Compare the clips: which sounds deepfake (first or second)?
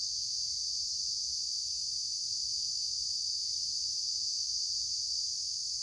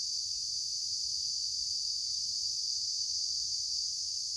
second